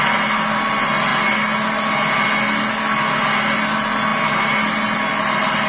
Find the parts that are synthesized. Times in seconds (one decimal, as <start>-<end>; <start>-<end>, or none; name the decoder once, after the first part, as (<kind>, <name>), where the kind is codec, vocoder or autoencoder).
none

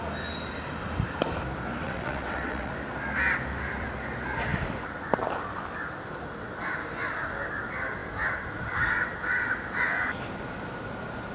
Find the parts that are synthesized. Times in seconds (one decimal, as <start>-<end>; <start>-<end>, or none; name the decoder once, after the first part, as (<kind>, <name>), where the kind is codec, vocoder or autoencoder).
1.8-2.7 (vocoder, WaveNeXt)

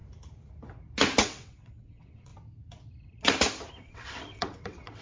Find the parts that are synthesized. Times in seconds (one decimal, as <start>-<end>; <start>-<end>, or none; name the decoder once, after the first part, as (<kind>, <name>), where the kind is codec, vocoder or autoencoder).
1.2-2.3 (vocoder, WaveNeXt); 3.7-5.0

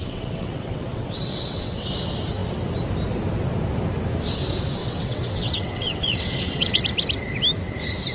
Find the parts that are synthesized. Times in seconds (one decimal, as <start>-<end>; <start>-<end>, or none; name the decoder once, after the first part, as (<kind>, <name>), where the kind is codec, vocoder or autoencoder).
0.0-1.9 (vocoder, WaveNeXt); 4.8-6.8

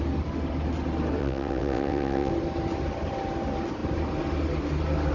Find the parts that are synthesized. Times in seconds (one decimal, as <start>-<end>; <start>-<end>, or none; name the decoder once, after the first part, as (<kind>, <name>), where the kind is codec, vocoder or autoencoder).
1.2-2.3 (vocoder, WaveNeXt)